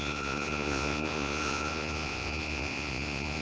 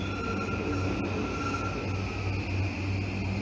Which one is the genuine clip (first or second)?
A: second